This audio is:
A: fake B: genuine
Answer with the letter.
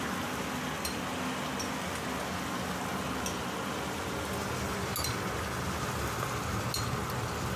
B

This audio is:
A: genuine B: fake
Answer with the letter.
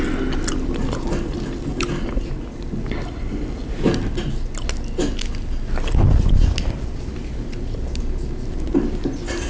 A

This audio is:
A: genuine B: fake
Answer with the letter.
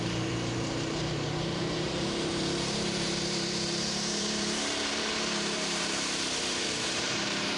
B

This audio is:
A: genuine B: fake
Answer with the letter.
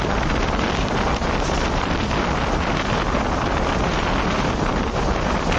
A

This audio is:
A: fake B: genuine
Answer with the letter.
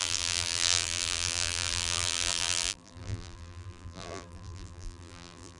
A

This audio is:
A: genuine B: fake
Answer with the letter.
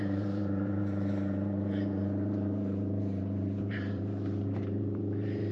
B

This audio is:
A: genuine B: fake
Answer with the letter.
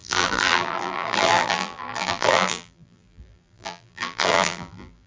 B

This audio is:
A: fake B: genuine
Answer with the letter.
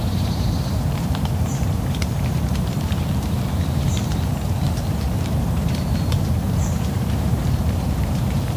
A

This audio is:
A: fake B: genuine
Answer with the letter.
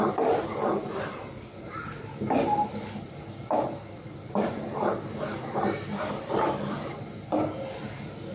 B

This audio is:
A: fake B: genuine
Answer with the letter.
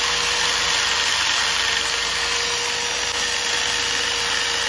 B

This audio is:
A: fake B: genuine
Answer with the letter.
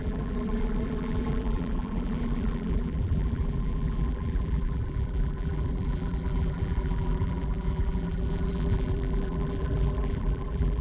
A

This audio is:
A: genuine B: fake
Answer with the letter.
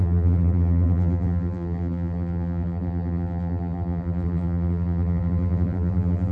B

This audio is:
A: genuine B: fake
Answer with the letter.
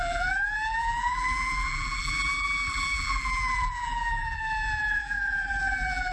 B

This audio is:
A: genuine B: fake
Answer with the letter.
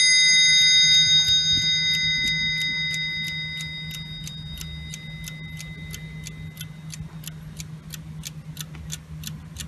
A